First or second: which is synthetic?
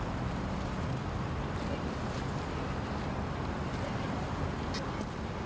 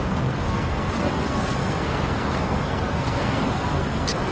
second